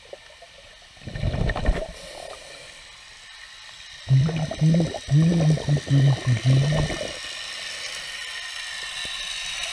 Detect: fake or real real